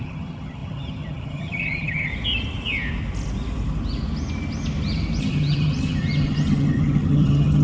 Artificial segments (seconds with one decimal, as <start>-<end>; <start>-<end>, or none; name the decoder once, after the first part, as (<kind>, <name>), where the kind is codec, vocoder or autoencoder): 0.0-2.1 (vocoder, HiFi-GAN); 5.2-7.6